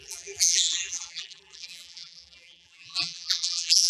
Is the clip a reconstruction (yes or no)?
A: yes